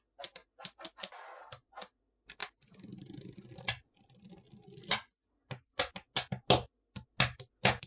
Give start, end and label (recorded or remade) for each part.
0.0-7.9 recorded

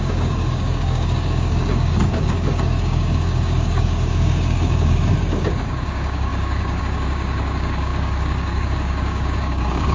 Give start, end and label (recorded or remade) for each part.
0.0-9.9 remade

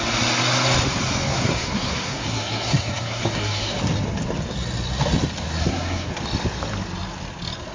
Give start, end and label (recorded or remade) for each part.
0.0-1.3 recorded; 1.3-3.8 remade; 3.8-5.6 recorded; 5.6-6.1 remade; 6.1-7.7 recorded

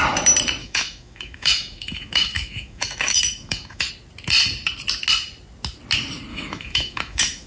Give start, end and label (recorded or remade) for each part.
0.0-0.6 recorded; 0.6-3.9 remade; 3.9-6.3 recorded; 6.3-7.5 remade

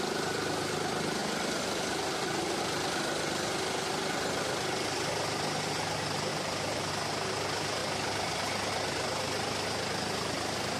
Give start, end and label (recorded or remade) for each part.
0.0-1.2 recorded; 1.2-2.6 remade; 2.6-6.3 recorded; 6.3-6.9 remade; 6.9-10.8 recorded

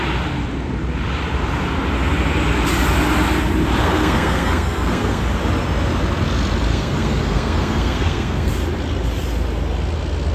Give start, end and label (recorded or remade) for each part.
0.0-3.8 recorded; 3.8-5.2 remade; 5.2-6.7 recorded; 6.7-8.5 remade; 8.5-10.3 recorded

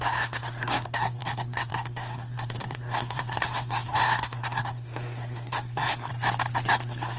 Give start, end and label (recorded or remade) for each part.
0.0-6.1 remade; 6.1-6.7 recorded; 6.7-7.2 remade

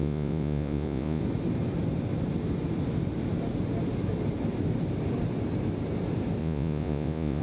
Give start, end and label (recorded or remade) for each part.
0.0-1.2 remade; 1.2-6.4 recorded; 6.4-7.4 remade